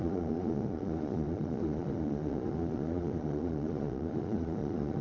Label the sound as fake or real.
fake